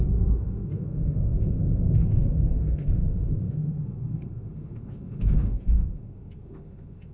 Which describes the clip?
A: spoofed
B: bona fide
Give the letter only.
A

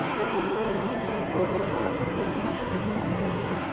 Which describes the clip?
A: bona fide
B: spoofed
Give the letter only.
B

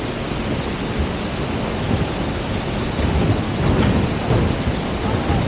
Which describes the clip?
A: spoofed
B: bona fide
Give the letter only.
B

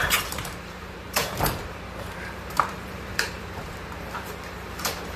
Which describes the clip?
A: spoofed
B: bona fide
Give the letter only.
A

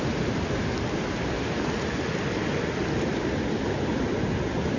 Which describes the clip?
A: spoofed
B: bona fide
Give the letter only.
B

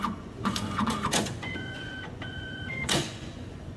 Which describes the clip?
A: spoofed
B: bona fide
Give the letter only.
A